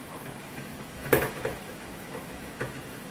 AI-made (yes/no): yes